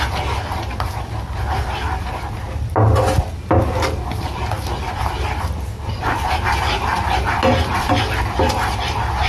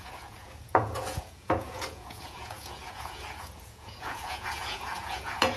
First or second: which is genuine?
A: first